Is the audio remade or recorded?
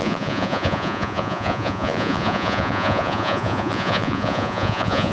remade